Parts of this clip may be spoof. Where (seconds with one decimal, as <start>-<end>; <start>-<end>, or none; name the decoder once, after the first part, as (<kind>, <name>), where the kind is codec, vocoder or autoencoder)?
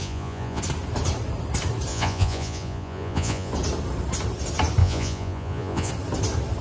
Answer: 0.0-0.6 (vocoder, Vocos); 1.9-3.5; 4.8-5.9